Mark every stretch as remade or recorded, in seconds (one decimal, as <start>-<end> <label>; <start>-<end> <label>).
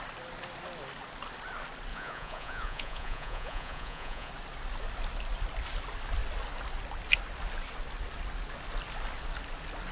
0.0-1.9 recorded; 1.9-4.3 remade; 4.3-9.9 recorded